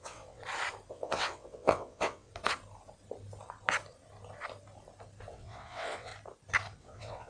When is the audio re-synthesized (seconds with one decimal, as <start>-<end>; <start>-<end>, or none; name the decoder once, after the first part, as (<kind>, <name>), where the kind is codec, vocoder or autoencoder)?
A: 0.0-0.4 (vocoder, WaveNeXt); 0.9-2.3; 5.3-6.1; 6.8-7.3